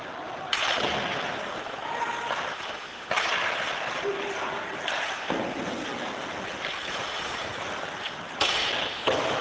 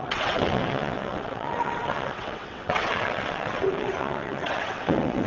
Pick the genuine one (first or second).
first